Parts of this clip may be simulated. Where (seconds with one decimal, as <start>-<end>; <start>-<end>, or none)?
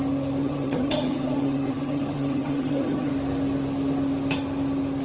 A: 0.4-3.1